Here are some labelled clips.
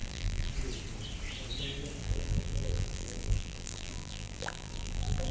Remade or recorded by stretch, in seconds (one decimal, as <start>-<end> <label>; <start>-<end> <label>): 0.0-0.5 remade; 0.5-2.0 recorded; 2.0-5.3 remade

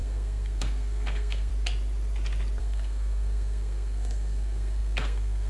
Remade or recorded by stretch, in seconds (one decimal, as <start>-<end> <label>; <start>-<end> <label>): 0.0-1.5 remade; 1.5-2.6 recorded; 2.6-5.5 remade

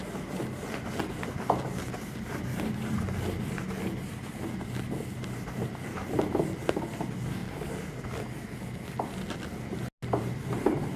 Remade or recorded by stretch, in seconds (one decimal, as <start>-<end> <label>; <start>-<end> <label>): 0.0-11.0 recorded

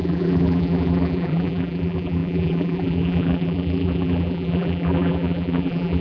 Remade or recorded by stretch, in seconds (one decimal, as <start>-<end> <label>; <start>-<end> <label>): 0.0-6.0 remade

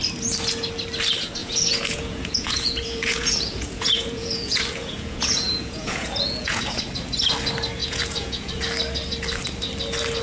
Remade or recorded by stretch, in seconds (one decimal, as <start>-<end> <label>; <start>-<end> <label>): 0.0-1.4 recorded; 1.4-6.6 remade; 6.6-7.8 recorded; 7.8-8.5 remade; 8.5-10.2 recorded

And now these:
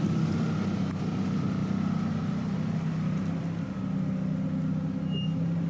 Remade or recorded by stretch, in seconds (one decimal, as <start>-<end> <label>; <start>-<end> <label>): 0.0-5.7 recorded